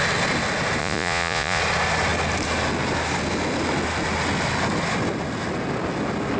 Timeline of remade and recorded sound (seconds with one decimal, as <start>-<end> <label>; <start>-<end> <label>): 0.0-0.8 recorded; 0.8-1.6 remade; 1.6-6.4 recorded